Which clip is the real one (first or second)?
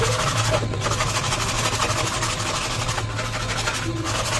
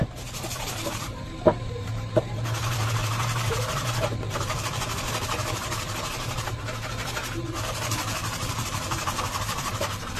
first